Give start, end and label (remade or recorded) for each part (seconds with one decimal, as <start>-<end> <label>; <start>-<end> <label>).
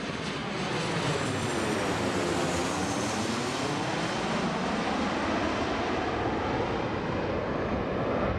0.0-8.4 recorded